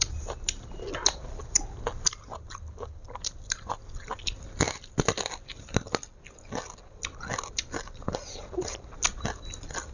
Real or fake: real